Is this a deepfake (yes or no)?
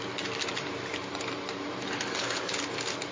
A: no